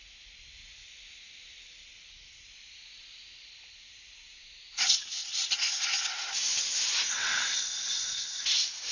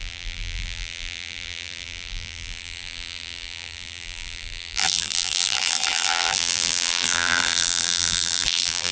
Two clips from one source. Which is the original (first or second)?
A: first